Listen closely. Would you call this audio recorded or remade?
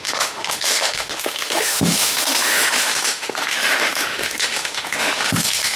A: remade